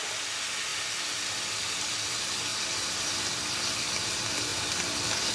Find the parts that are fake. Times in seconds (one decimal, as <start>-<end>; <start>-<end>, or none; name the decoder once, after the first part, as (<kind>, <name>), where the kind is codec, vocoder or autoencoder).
none